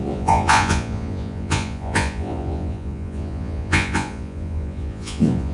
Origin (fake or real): fake